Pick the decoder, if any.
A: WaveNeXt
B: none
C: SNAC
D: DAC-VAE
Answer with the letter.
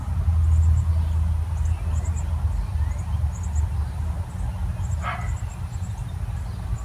B